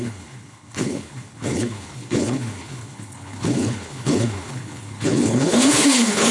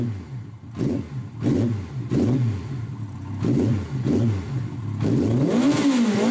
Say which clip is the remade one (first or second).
first